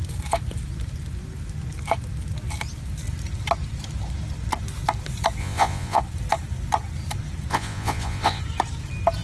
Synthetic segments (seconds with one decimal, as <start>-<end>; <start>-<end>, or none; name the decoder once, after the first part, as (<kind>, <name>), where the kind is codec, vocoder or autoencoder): 5.4-6.0 (vocoder, Vocos); 7.5-8.4